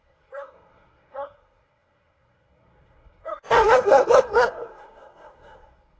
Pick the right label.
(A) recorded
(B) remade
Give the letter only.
B